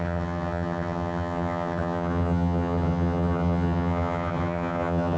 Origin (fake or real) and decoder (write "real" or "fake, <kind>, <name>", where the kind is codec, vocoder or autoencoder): fake, vocoder, HiFi-GAN